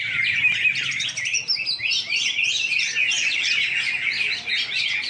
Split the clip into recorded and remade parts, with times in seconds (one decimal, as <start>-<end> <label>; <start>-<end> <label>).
0.0-3.2 recorded; 3.2-4.5 remade; 4.5-5.1 recorded